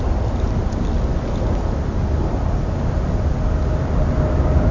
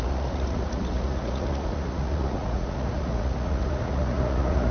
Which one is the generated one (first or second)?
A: second